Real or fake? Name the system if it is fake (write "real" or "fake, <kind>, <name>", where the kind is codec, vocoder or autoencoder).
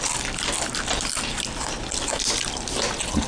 real